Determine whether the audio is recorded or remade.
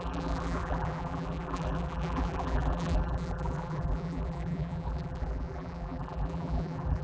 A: remade